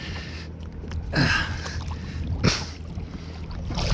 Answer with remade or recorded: recorded